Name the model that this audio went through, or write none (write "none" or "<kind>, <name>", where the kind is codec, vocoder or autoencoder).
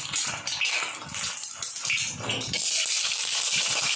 none